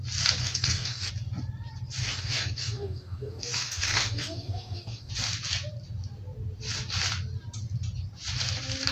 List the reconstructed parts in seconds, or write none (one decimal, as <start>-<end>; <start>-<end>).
0.4-1.1; 2.0-5.1

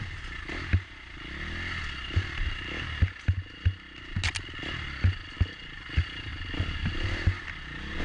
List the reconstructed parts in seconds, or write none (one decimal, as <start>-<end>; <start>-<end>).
none

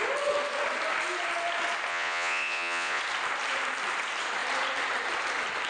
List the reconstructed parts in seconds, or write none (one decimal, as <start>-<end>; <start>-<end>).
1.9-3.0

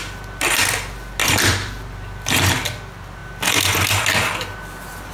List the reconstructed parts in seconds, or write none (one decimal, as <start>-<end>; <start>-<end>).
1.2-2.5